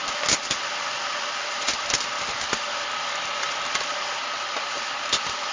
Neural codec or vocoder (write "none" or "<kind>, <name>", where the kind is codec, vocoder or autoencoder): none